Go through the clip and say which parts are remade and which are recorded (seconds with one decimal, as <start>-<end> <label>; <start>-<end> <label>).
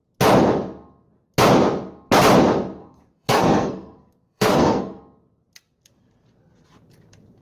0.0-2.8 recorded; 2.8-5.0 remade; 5.0-7.4 recorded